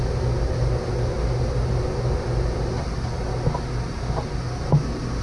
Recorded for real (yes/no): yes